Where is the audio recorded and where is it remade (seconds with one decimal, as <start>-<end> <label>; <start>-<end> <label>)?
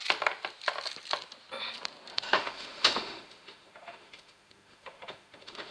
0.0-2.1 recorded; 2.1-5.7 remade